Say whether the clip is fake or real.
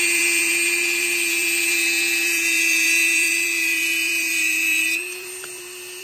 fake